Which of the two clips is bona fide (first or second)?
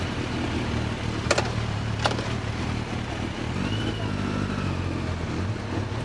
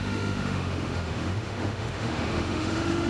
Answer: first